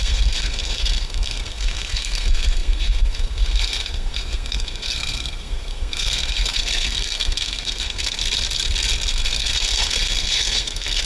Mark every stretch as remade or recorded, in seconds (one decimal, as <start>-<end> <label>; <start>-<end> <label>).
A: 0.0-8.2 remade; 8.2-9.1 recorded; 9.1-11.1 remade